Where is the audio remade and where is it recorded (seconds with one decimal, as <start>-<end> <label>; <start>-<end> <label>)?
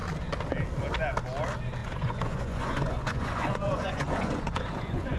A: 0.0-1.8 recorded; 1.8-5.2 remade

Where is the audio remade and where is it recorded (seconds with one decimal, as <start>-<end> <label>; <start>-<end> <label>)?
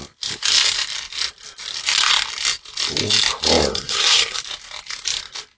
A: 0.0-3.7 recorded; 3.7-4.4 remade; 4.4-5.6 recorded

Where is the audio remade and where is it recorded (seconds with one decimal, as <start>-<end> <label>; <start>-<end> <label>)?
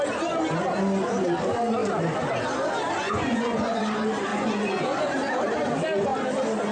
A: 0.0-3.0 recorded; 3.0-3.8 remade; 3.8-4.3 recorded; 4.3-5.1 remade; 5.1-6.7 recorded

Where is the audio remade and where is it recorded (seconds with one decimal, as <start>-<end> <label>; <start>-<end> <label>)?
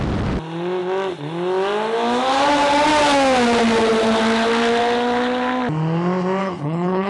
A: 0.0-6.4 recorded; 6.4-7.1 remade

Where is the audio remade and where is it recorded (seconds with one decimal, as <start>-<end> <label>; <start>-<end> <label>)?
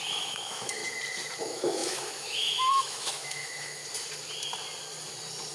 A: 0.0-0.8 remade; 0.8-1.4 recorded; 1.4-3.8 remade; 3.8-5.5 recorded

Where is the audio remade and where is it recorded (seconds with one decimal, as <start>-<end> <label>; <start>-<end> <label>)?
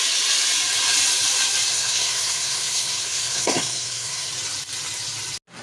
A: 0.0-1.7 recorded; 1.7-4.3 remade; 4.3-5.6 recorded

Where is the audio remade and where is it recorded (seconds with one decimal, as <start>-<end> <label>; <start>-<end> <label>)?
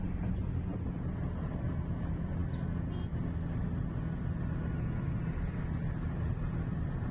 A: 0.0-7.1 recorded